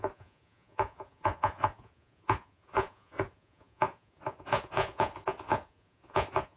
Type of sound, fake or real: fake